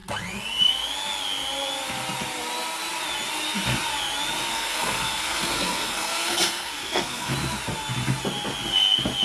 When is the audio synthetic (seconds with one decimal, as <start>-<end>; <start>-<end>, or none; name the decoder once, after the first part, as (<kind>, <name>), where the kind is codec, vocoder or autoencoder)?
4.5-7.3 (codec, SNAC)